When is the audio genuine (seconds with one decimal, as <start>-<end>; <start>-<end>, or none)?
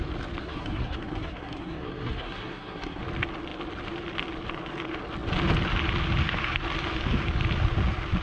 0.0-0.4; 3.0-8.2